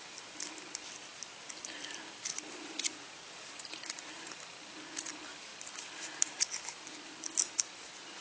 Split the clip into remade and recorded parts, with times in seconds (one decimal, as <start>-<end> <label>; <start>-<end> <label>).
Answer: 0.0-8.2 recorded